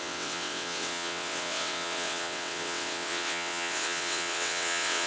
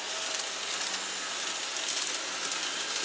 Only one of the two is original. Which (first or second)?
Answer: second